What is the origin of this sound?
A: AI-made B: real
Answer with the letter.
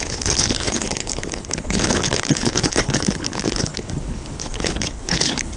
A